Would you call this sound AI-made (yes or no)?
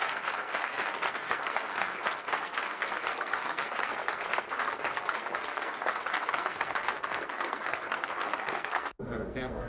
yes